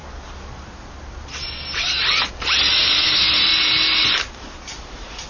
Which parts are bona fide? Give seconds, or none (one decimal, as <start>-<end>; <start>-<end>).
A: 0.0-2.3; 3.5-4.7